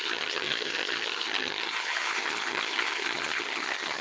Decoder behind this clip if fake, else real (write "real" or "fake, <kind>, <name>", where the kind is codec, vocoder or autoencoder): fake, vocoder, HiFi-GAN